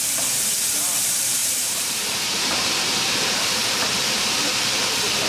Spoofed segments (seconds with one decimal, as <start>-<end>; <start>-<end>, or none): 1.4-4.6